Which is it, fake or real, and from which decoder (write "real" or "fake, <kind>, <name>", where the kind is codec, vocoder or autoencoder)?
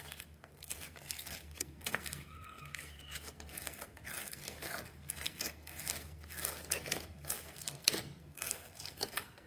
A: fake, codec, SNAC